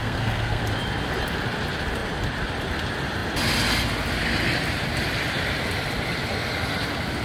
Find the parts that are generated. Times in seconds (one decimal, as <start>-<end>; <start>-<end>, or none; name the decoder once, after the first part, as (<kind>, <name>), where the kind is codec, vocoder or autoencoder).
0.0-0.6 (codec, SNAC)